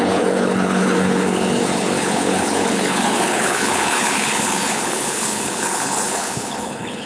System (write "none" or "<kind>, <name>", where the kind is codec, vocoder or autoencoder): codec, HILCodec